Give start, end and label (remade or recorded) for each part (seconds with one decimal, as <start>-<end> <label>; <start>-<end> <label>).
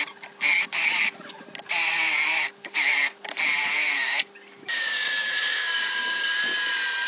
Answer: 0.0-4.7 recorded; 4.7-6.3 remade; 6.3-7.1 recorded